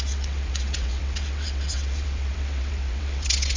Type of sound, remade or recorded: remade